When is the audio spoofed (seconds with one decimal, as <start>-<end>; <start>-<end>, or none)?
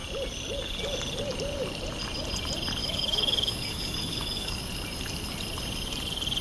2.8-4.6